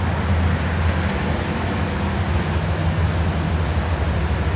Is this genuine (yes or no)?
yes